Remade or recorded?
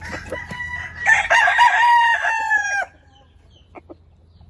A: recorded